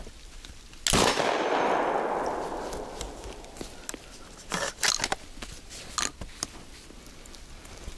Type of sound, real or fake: real